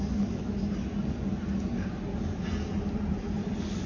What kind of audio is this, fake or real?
real